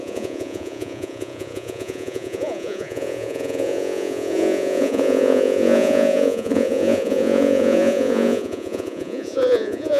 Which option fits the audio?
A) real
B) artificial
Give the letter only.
B